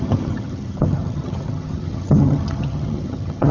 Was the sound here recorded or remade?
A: remade